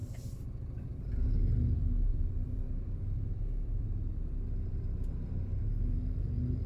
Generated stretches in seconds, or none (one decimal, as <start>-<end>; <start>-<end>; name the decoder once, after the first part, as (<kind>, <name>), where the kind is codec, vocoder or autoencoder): 2.1-5.1 (vocoder, BigVGAN v2)